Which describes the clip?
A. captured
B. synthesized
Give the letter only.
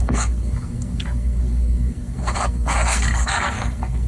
B